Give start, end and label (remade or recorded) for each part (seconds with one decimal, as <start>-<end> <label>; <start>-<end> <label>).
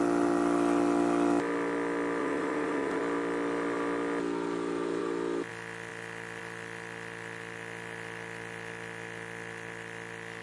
0.0-2.2 recorded; 2.2-3.0 remade; 3.0-10.4 recorded